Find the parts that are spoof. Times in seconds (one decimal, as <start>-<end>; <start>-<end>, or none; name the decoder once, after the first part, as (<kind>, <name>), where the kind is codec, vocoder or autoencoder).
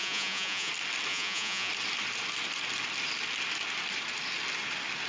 0.0-0.7 (vocoder, Vocos); 1.1-1.7